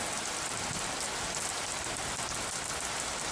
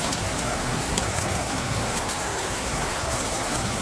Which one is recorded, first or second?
first